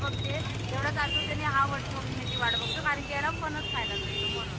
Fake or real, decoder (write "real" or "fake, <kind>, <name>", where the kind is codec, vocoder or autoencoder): real